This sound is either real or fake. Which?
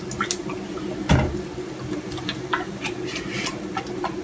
real